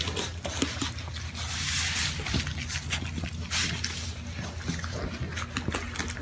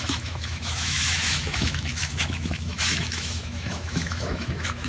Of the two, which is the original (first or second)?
first